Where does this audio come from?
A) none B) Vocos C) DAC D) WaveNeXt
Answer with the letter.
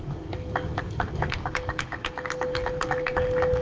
C